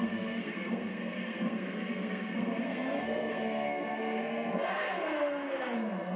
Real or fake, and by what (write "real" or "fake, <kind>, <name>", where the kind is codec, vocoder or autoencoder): fake, codec, SNAC